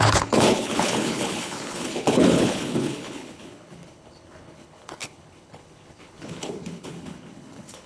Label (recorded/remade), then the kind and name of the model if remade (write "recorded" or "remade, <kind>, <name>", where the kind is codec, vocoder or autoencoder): remade, codec, HILCodec